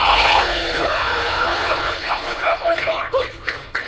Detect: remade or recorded remade